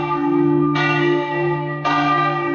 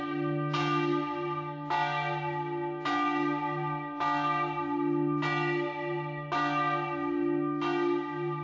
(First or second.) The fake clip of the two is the first